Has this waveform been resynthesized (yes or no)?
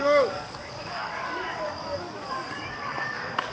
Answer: yes